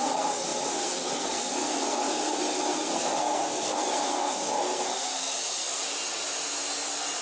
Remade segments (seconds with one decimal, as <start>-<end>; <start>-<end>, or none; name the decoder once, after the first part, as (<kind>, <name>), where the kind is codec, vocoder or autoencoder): 0.0-5.8 (codec, SNAC)